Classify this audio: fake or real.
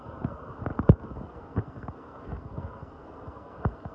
fake